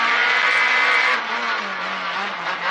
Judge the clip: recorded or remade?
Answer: recorded